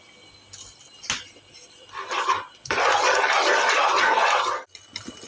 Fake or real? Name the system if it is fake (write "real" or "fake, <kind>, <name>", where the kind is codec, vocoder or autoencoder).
real